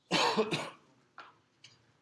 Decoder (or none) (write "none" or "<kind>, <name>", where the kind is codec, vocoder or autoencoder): none